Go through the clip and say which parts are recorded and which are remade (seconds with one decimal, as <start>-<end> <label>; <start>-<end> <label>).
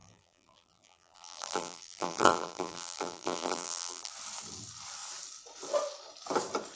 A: 0.0-4.1 remade; 4.1-6.8 recorded